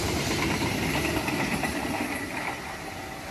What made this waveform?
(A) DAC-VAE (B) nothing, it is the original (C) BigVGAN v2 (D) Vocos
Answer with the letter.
B